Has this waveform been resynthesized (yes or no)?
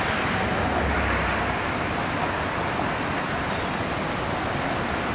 no